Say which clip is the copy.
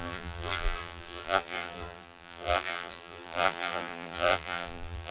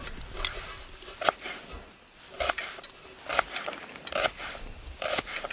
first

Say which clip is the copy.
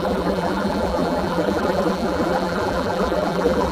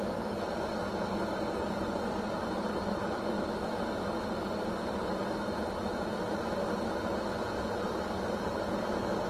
first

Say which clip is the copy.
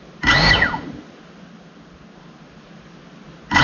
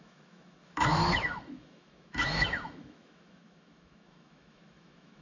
second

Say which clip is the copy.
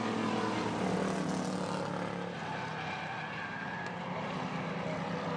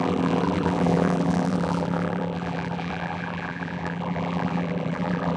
second